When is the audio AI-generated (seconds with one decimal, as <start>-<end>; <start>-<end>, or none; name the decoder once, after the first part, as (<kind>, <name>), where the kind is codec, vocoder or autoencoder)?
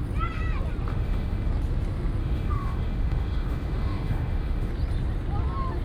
0.9-1.5 (autoencoder, DAC-VAE); 2.2-4.7